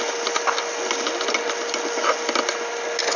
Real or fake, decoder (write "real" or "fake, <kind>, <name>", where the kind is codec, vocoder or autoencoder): real